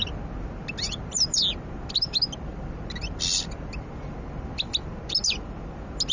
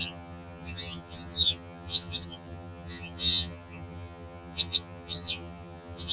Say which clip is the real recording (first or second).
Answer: first